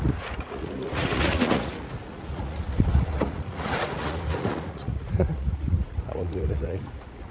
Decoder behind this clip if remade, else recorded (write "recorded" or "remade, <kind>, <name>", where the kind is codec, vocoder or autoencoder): remade, vocoder, Vocos